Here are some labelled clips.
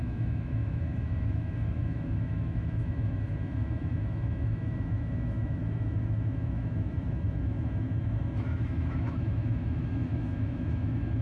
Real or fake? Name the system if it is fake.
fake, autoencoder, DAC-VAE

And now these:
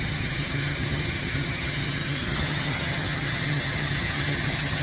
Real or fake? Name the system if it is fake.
fake, vocoder, HiFi-GAN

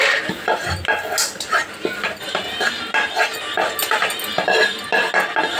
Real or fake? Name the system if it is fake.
real